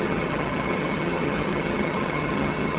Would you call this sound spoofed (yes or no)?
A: yes